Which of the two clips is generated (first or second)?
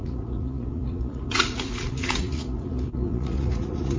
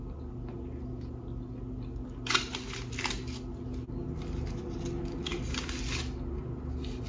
first